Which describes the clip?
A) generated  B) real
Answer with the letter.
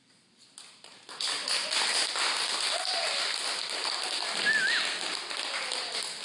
A